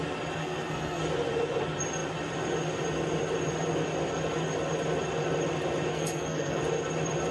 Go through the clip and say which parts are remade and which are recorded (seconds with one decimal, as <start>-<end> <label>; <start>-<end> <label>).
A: 0.0-0.4 recorded; 0.4-1.0 remade; 1.0-5.9 recorded; 5.9-6.6 remade; 6.6-7.3 recorded